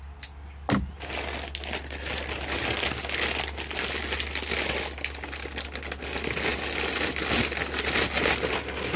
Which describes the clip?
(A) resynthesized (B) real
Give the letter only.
B